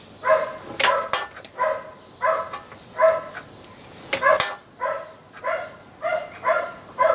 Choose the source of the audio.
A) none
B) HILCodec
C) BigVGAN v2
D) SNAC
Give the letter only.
A